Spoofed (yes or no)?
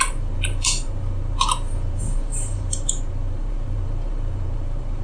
yes